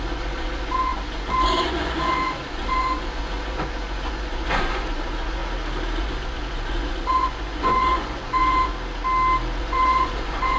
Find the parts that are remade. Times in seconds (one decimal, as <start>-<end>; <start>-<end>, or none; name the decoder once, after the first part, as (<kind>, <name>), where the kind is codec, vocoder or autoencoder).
0.0-5.4 (vocoder, Vocos); 6.0-8.7; 9.6-10.6